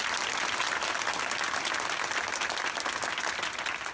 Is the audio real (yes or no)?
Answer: yes